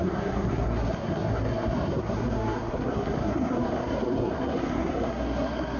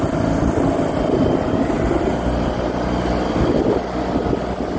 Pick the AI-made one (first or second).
first